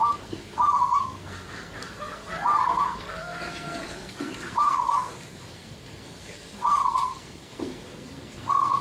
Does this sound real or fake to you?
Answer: fake